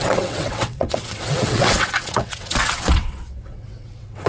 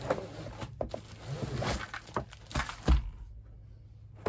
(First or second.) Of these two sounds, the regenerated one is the first